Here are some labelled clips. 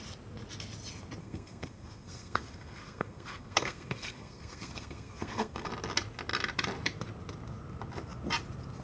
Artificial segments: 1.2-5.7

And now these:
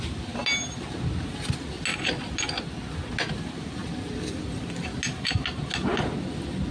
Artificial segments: none

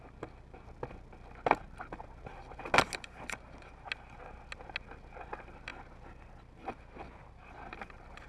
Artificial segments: none